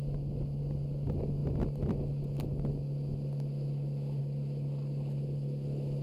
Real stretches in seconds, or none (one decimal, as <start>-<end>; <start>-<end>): 0.0-6.0